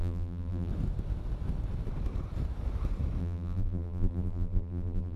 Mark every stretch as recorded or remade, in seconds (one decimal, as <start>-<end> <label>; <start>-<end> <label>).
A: 0.0-0.7 remade; 0.7-3.2 recorded; 3.2-5.2 remade